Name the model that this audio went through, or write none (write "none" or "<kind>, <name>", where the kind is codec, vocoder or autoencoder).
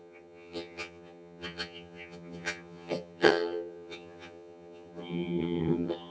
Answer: vocoder, HiFi-GAN